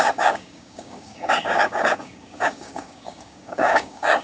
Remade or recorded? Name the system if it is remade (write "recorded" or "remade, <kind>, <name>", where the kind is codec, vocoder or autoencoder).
remade, codec, DAC